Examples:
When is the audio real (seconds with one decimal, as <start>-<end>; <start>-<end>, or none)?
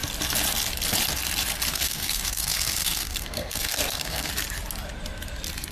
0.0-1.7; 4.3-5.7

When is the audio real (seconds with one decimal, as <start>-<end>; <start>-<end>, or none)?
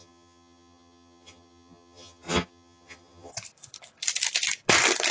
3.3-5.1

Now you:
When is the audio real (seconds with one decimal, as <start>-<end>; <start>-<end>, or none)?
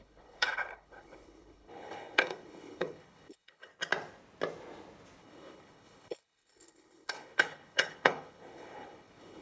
3.7-5.2